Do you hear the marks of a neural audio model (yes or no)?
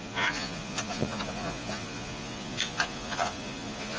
yes